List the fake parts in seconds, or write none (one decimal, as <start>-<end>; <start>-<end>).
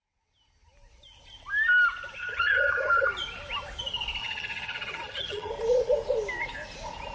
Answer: 2.2-3.1; 4.2-5.5